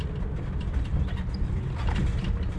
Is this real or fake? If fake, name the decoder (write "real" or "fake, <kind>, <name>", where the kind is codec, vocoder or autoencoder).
real